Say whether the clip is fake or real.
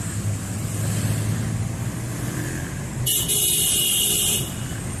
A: real